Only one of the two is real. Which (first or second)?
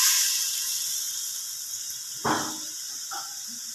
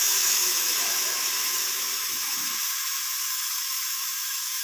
first